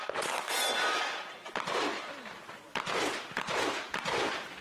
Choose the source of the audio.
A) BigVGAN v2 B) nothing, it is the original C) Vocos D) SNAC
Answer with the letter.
B